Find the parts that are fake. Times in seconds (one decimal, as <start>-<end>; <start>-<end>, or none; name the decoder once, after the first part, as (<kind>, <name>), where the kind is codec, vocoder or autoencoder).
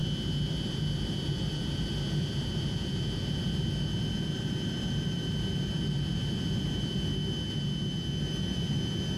0.5-7.1 (vocoder, BigVGAN v2); 8.2-9.2